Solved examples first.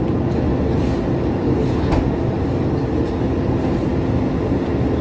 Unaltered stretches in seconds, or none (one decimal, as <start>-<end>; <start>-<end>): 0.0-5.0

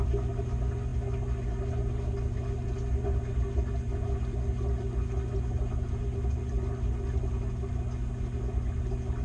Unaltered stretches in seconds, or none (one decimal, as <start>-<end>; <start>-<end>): 0.0-9.2

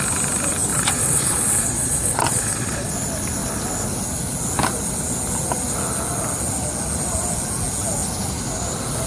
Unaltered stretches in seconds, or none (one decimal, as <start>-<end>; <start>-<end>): 0.0-0.7; 2.9-9.1